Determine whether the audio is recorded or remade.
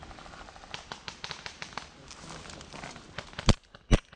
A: recorded